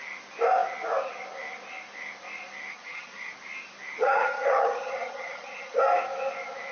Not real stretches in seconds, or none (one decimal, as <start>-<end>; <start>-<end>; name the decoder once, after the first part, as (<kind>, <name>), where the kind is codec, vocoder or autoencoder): 2.7-3.3 (vocoder, HiFi-GAN); 4.0-5.8